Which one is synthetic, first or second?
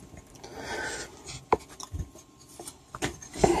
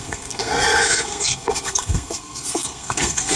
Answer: second